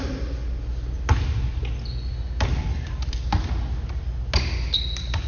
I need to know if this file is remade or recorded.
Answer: recorded